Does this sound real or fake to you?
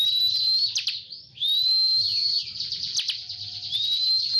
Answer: fake